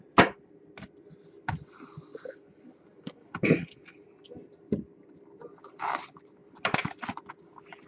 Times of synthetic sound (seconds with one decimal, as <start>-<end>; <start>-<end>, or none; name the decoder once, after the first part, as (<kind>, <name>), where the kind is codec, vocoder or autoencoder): none